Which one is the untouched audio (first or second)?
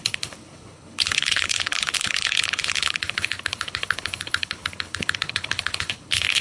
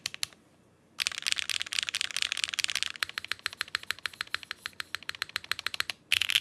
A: second